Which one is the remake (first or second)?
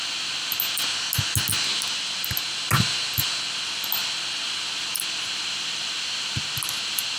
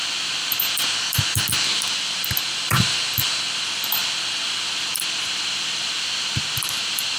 second